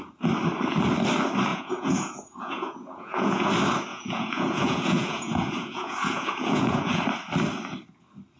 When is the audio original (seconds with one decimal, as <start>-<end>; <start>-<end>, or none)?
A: 0.0-1.5; 3.5-3.9; 7.0-8.4